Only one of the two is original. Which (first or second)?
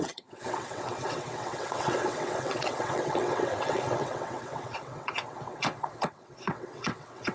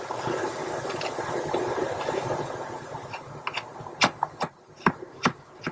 second